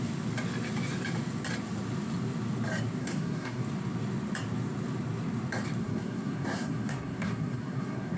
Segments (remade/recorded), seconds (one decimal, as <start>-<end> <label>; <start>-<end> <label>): 0.0-3.0 recorded; 3.0-3.6 remade; 3.6-5.8 recorded; 5.8-8.2 remade